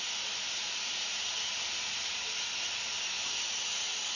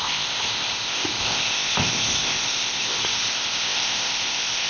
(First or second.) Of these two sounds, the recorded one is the first